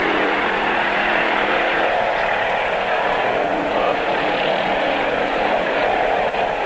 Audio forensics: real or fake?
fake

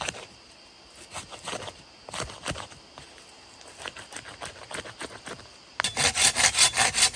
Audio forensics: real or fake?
real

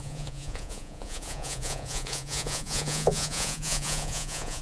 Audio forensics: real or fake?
fake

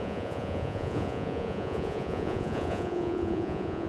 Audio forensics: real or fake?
fake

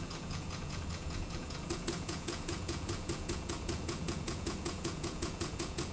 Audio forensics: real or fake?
fake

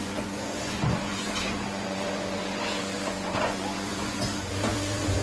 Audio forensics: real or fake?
fake